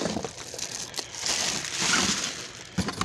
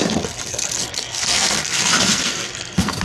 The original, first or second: first